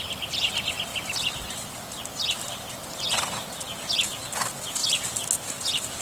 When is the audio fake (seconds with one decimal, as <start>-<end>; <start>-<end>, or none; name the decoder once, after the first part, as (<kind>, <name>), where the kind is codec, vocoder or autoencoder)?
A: none